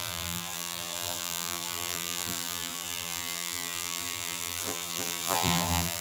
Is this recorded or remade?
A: remade